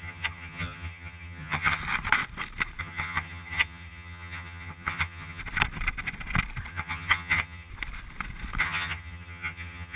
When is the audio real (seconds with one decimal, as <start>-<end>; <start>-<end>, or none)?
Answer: 1.8-2.8; 5.4-6.7; 7.7-8.6